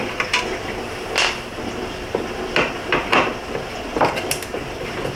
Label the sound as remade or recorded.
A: recorded